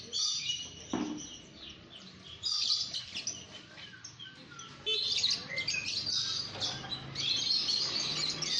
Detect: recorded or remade recorded